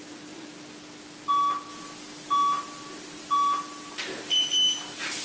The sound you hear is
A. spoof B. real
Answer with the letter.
B